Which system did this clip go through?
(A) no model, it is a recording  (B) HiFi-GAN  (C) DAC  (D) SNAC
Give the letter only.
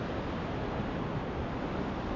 A